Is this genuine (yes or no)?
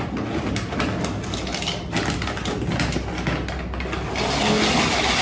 yes